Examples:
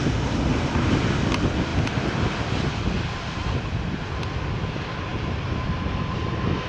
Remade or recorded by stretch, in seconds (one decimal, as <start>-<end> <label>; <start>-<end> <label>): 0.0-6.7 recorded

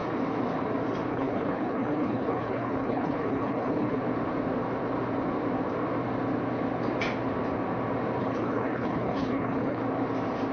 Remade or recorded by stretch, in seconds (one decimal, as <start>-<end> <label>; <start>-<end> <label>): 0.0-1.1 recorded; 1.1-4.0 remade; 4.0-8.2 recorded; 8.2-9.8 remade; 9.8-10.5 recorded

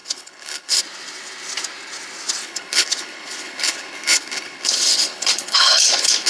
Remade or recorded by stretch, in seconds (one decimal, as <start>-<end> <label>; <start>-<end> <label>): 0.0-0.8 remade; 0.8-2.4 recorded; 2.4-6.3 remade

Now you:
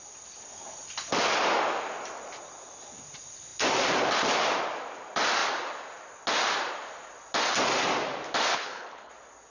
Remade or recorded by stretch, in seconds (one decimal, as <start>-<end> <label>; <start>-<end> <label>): 0.0-8.5 recorded; 8.5-9.1 remade; 9.1-9.5 recorded